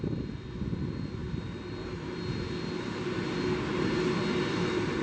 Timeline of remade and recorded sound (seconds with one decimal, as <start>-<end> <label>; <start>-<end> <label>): 0.0-5.0 recorded